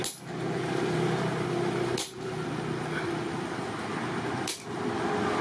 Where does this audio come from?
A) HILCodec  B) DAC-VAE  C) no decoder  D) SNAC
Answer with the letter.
C